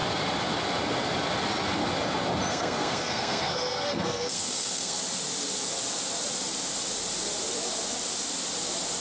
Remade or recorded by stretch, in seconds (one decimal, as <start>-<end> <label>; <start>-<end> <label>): 0.0-2.5 recorded; 2.5-5.0 remade; 5.0-9.0 recorded